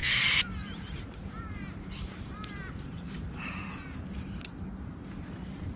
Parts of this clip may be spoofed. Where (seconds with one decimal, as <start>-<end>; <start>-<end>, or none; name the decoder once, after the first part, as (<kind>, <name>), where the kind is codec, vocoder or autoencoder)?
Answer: 0.0-3.1 (vocoder, BigVGAN v2)